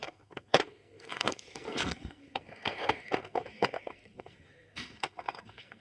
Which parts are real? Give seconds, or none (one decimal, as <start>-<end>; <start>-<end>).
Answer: none